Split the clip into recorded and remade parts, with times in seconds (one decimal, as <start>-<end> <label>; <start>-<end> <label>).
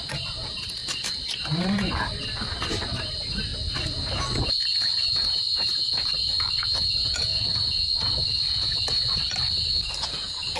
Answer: 0.0-0.8 remade; 0.8-3.0 recorded; 3.0-3.5 remade; 3.5-4.5 recorded; 4.5-7.3 remade; 7.3-8.8 recorded; 8.8-10.6 remade